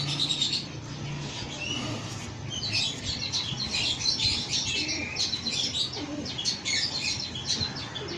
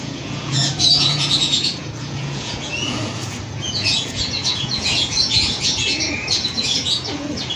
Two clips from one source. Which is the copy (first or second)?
second